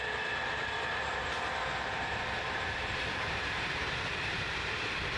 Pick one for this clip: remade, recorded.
remade